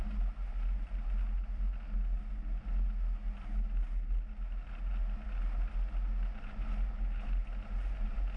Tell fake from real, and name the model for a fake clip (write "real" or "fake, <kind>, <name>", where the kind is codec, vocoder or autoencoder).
real